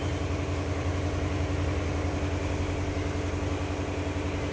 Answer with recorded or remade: recorded